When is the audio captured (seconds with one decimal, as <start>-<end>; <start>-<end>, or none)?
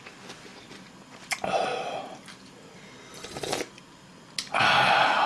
0.0-5.3